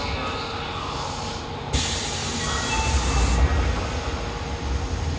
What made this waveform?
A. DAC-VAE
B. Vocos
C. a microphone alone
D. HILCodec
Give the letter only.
C